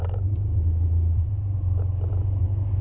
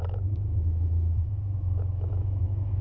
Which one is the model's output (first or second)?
second